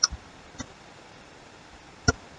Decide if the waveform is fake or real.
fake